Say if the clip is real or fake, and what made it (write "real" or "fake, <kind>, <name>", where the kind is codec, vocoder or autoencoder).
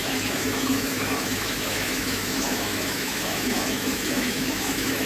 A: fake, autoencoder, DAC-VAE